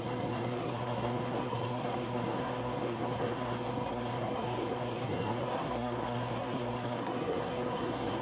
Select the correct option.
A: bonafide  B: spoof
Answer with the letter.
B